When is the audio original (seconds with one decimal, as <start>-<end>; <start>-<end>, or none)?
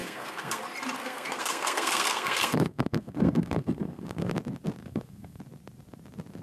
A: 0.6-1.0; 4.3-4.8; 5.4-6.4